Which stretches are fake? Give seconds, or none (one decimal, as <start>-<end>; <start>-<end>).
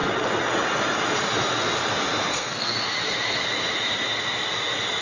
2.3-2.9